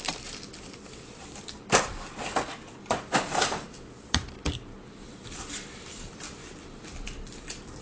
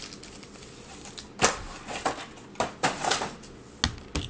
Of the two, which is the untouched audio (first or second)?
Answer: second